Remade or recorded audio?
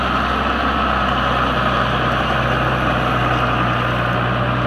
recorded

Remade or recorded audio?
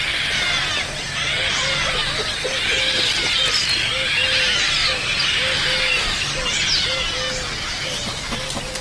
recorded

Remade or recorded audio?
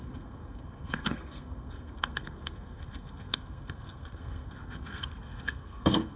remade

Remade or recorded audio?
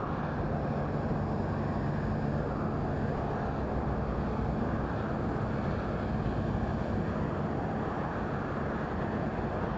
recorded